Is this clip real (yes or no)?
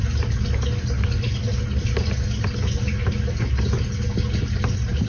yes